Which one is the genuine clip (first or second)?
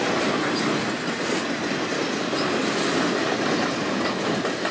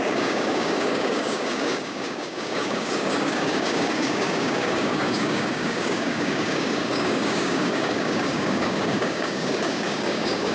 first